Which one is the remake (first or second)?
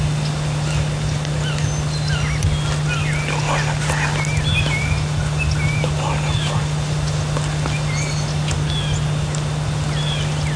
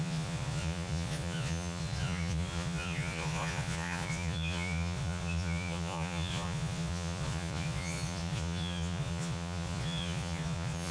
second